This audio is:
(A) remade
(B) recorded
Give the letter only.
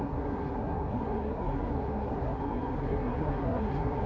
A